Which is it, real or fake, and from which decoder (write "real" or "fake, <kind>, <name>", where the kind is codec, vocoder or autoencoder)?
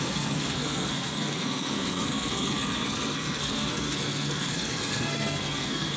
fake, codec, SNAC